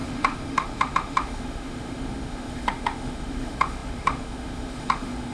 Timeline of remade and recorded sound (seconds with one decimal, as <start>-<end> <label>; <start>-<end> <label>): 0.0-5.3 remade